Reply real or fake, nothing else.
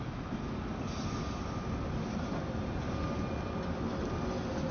real